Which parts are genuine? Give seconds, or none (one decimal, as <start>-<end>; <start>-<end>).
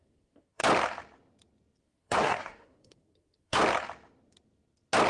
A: 0.6-1.8; 3.6-5.1